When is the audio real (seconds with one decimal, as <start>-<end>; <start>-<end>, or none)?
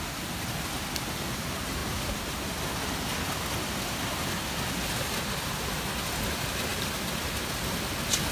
0.0-6.7; 7.2-8.3